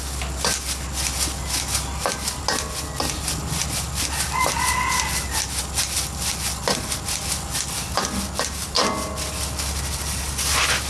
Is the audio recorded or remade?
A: recorded